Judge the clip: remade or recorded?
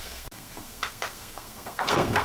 remade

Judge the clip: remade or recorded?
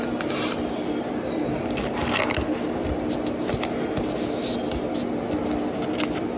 recorded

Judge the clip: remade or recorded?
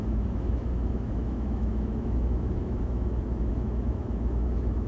remade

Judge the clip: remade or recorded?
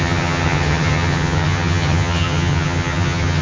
remade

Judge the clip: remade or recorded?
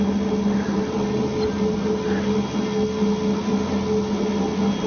recorded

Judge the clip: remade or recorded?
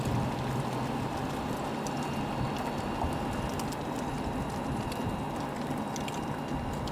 recorded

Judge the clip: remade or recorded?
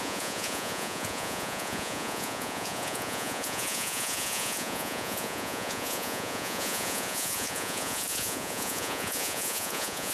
remade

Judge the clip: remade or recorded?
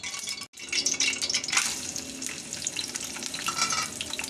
recorded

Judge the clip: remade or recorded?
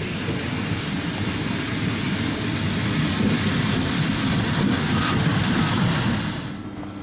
recorded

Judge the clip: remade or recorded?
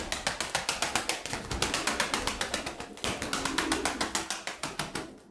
recorded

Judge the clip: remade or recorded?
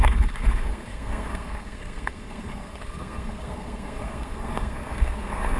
remade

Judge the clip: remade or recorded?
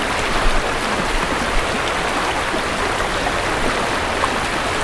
recorded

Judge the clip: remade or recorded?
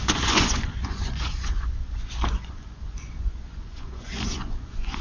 remade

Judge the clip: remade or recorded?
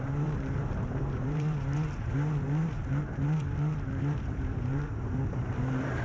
remade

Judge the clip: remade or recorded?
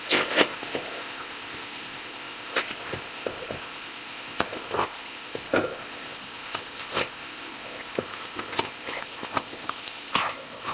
remade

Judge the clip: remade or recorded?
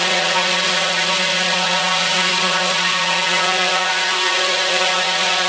remade